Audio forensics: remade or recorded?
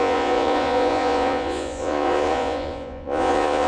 remade